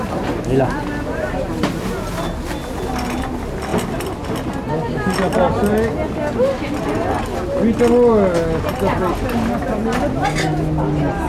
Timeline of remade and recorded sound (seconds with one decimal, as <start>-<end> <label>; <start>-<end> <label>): 0.0-11.3 recorded